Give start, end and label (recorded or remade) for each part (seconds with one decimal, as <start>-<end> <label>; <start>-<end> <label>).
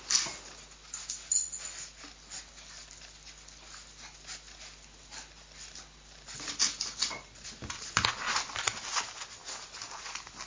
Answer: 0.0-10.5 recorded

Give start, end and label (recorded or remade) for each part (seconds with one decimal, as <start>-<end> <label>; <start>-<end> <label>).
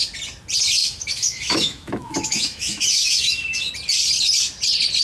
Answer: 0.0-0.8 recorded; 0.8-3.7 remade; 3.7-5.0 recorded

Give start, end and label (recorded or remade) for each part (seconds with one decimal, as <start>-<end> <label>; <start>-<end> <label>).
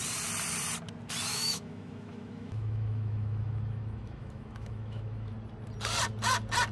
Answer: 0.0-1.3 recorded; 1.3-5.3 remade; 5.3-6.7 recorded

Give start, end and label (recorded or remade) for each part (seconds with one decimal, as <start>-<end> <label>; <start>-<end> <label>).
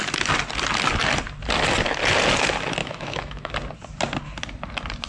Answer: 0.0-2.8 recorded; 2.8-3.5 remade; 3.5-5.1 recorded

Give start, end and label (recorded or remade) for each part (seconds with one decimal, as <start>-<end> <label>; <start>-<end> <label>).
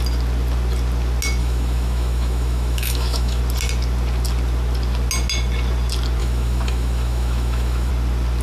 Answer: 0.0-1.4 recorded; 1.4-3.4 remade; 3.4-6.2 recorded; 6.2-7.9 remade; 7.9-8.4 recorded